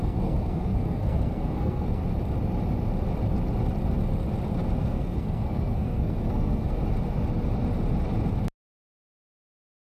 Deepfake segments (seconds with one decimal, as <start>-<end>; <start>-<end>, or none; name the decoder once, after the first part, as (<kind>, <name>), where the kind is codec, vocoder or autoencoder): 0.0-2.0 (codec, SNAC); 4.8-6.8; 9.3-10.0